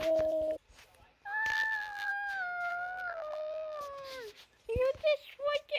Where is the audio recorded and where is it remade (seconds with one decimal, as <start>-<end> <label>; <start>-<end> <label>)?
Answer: 0.0-1.5 recorded; 1.5-2.1 remade; 2.1-2.7 recorded; 2.7-3.8 remade; 3.8-5.8 recorded